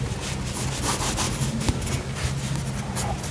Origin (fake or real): real